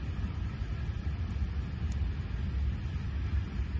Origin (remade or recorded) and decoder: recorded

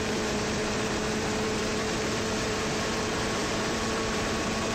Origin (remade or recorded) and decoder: remade, vocoder, BigVGAN v2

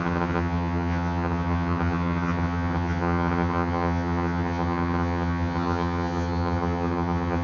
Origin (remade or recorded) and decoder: remade, vocoder, HiFi-GAN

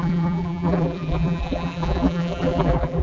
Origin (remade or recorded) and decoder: remade, vocoder, BigVGAN v2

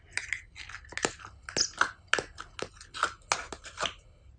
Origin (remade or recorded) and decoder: recorded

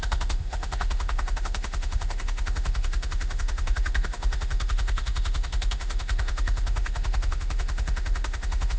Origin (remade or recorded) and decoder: remade, autoencoder, DAC-VAE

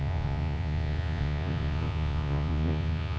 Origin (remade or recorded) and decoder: remade, vocoder, Vocos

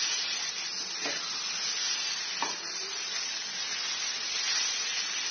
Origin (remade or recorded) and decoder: recorded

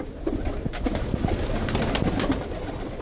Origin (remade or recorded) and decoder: recorded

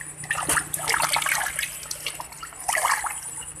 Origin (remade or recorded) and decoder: recorded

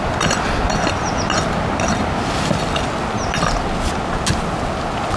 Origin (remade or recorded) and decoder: recorded